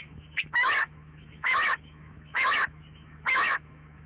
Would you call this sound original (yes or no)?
no